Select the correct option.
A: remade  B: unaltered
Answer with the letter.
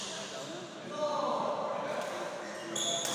B